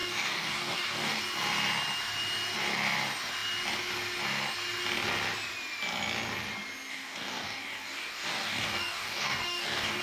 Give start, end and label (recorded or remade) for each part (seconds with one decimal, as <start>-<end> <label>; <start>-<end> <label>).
0.0-1.2 remade; 1.2-6.9 recorded; 6.9-10.0 remade